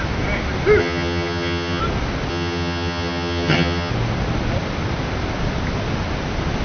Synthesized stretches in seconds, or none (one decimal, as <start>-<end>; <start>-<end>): 0.8-1.8; 2.3-3.9